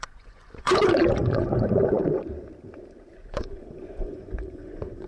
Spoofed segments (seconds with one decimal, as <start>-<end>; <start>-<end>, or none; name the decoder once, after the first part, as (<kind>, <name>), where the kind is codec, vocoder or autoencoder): 0.0-2.0 (vocoder, Vocos); 3.1-5.1